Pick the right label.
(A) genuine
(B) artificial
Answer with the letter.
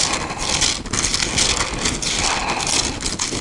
A